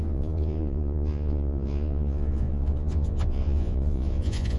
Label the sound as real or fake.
fake